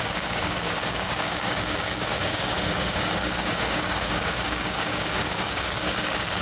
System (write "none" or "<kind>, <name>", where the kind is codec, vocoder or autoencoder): codec, DAC